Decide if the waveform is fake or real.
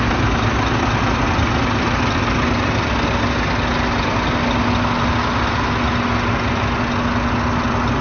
real